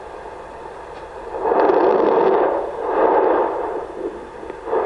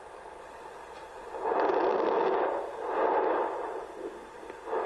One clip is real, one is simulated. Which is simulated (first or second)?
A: first